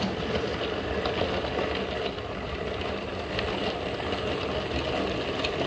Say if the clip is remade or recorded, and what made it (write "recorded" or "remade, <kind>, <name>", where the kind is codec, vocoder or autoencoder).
recorded